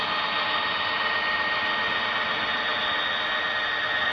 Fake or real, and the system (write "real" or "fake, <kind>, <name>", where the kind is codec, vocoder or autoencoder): real